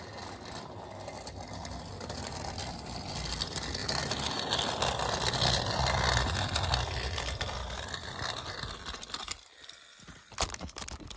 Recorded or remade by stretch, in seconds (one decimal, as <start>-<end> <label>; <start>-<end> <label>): 0.0-11.2 recorded